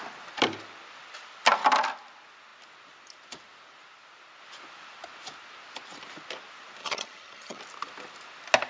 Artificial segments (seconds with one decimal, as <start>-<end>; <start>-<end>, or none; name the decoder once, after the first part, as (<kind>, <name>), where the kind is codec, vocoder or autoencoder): 6.8-7.6 (vocoder, HiFi-GAN)

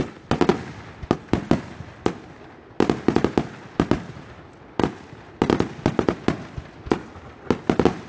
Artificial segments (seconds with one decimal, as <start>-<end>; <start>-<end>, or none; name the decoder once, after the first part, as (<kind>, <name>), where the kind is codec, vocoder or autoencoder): none

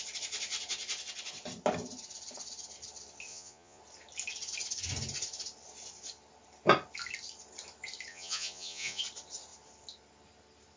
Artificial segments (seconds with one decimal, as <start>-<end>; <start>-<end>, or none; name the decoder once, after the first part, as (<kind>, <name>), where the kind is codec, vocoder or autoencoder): 3.3-3.8 (vocoder, Vocos); 8.1-9.0

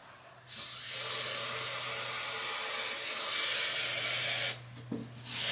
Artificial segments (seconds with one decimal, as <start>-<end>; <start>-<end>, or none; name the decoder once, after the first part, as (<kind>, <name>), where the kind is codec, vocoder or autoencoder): none

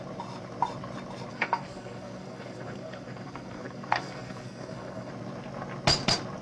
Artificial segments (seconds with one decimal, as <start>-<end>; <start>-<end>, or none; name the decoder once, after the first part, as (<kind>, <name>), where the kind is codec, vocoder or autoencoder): 1.3-5.1 (codec, SNAC)

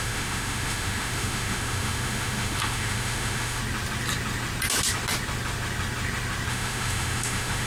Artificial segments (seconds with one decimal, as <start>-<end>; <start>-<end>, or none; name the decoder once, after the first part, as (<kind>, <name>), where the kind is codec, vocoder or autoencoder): 0.0-3.6 (autoencoder, DAC-VAE); 6.5-7.7